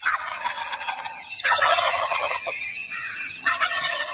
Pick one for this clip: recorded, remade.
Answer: remade